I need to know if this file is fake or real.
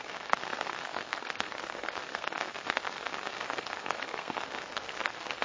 fake